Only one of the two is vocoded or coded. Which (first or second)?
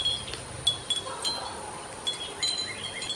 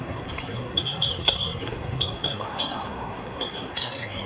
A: second